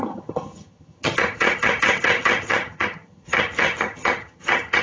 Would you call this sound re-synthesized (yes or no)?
yes